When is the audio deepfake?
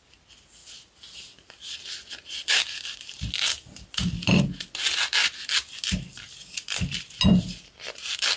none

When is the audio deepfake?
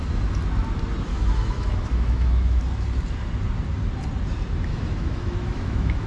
1.1-2.6 (autoencoder, DAC-VAE); 4.7-6.1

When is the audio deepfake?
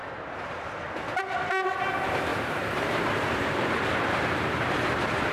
0.0-0.7 (vocoder, BigVGAN v2); 2.3-4.7